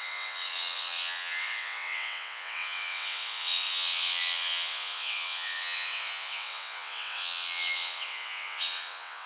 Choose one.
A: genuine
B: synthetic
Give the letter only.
B